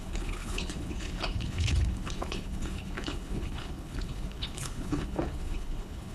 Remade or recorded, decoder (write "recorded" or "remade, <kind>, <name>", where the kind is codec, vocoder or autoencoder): remade, codec, HILCodec